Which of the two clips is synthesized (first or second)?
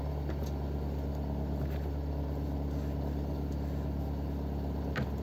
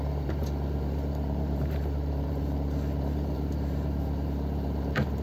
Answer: second